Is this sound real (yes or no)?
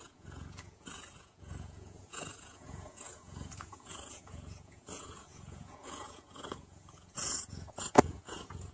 no